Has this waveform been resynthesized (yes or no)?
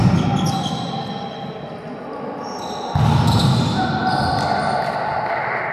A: no